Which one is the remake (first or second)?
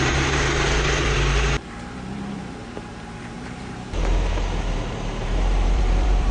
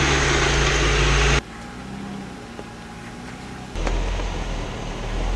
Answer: first